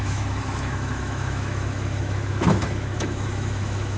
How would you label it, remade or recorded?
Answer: remade